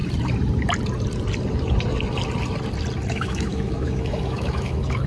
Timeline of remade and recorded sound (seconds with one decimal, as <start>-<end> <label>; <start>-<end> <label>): 0.0-3.1 recorded; 3.1-5.1 remade